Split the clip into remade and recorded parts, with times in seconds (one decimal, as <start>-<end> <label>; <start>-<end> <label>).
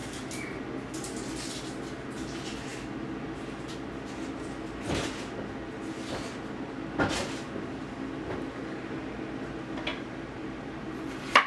0.0-0.6 remade; 0.6-9.9 recorded; 9.9-10.8 remade; 10.8-11.5 recorded